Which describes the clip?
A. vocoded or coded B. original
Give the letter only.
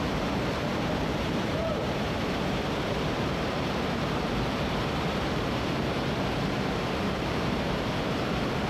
A